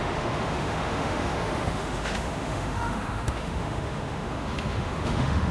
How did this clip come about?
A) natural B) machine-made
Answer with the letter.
B